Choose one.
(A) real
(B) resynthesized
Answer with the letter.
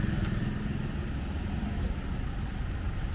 A